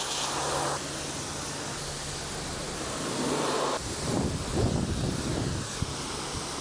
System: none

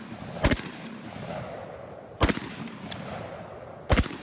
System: none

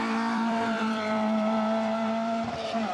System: vocoder, BigVGAN v2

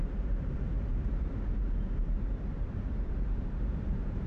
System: vocoder, BigVGAN v2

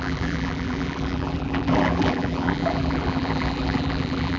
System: vocoder, BigVGAN v2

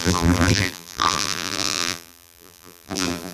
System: vocoder, BigVGAN v2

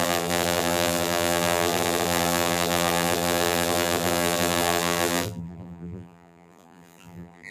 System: vocoder, BigVGAN v2